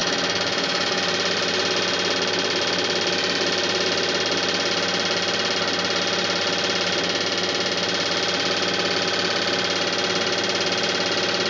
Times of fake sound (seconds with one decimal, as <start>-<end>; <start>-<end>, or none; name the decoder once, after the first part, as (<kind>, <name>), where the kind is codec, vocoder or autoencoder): 0.0-1.0 (autoencoder, DAC-VAE)